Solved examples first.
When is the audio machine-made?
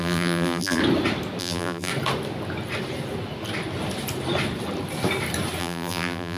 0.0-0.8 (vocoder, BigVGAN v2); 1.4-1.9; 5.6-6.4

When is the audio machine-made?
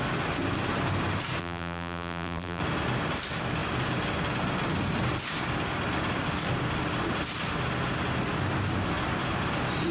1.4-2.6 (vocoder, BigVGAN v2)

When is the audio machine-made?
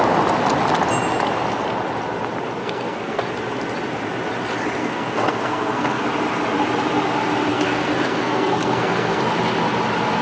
2.6-3.2 (codec, SNAC); 4.8-6.0; 7.5-9.2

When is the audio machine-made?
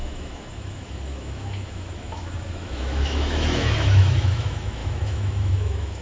0.0-6.0 (autoencoder, DAC-VAE)